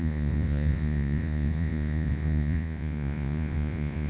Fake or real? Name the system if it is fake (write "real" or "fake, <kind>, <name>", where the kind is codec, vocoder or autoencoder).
fake, vocoder, Vocos